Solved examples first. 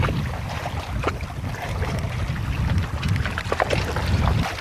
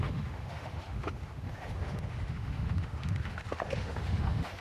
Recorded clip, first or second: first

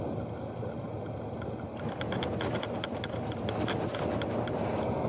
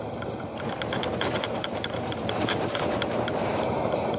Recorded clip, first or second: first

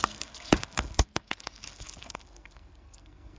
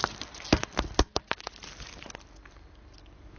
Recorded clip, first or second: second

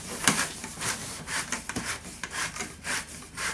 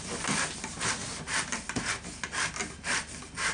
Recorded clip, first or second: second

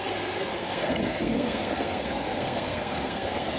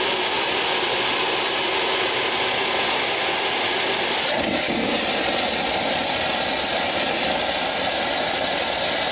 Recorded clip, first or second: second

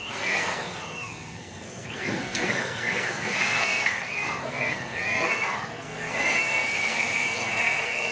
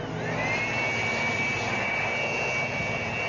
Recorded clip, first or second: second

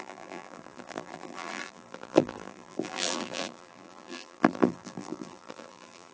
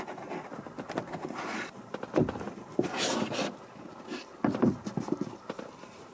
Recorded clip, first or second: second